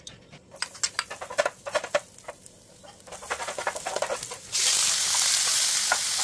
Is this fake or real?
real